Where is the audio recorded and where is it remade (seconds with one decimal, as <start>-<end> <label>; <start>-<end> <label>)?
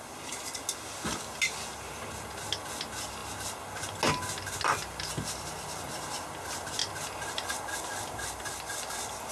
0.0-9.3 recorded